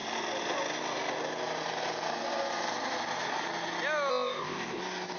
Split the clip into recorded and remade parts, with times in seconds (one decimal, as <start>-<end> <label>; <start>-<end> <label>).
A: 0.0-4.1 recorded; 4.1-4.8 remade; 4.8-5.2 recorded